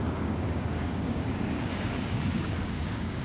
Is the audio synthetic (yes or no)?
yes